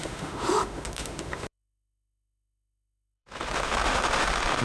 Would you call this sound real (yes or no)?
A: no